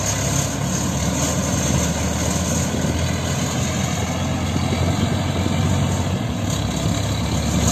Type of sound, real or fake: real